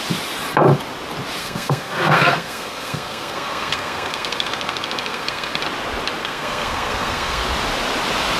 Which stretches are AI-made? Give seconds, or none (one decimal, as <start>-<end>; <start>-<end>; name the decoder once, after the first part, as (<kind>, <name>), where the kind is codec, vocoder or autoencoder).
1.4-5.6 (codec, SNAC); 6.2-7.4